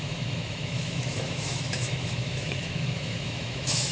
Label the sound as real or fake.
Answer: fake